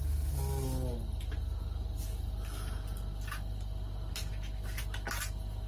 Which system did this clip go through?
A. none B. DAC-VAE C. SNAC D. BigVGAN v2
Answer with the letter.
A